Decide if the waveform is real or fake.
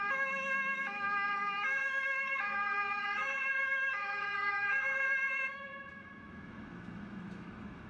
fake